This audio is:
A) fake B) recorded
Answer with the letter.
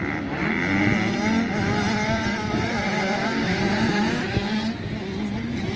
B